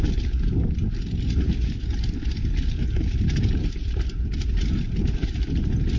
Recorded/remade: recorded